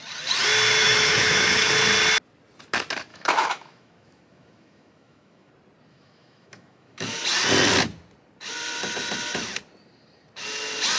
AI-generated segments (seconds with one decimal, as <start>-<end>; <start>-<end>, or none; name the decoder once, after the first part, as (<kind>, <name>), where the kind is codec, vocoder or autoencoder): 0.8-1.7 (autoencoder, DAC-VAE); 3.1-5.5; 5.9-7.2